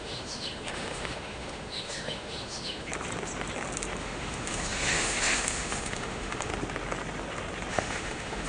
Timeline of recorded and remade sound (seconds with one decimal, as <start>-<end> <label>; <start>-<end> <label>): 0.0-2.9 remade; 2.9-4.0 recorded; 4.0-6.5 remade; 6.5-7.7 recorded; 7.7-8.5 remade